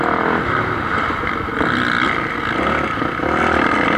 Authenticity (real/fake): real